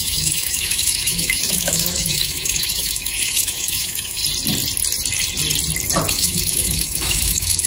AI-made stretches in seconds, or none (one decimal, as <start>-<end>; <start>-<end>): 0.0-4.2; 6.1-7.7